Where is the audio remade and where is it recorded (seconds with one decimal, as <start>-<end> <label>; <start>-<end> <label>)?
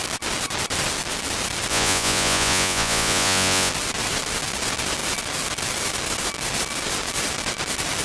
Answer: 0.0-1.7 recorded; 1.7-3.7 remade; 3.7-8.0 recorded